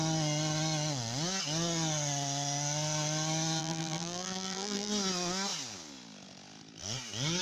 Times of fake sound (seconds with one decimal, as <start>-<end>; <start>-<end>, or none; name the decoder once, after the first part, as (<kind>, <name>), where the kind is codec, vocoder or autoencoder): 3.6-4.9 (vocoder, BigVGAN v2)